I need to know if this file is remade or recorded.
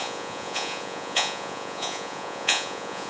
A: remade